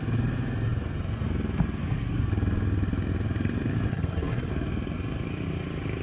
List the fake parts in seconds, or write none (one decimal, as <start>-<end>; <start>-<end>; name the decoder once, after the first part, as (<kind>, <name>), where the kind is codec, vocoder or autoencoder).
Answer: 3.9-4.5 (codec, SNAC)